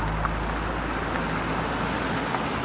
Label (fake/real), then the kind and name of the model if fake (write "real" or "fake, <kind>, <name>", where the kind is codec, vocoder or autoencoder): real